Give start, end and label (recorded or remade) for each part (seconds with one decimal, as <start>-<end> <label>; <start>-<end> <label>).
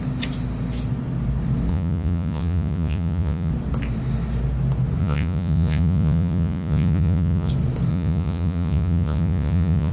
0.0-1.7 recorded; 1.7-3.5 remade; 3.5-5.0 recorded; 5.0-7.5 remade; 7.5-7.9 recorded; 7.9-9.9 remade